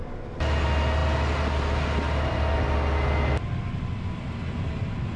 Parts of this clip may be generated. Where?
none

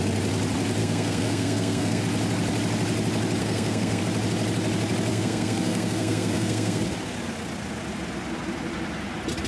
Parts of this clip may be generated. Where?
0.8-2.0 (codec, SNAC); 3.4-4.0; 5.1-6.8